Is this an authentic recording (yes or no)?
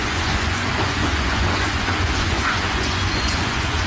no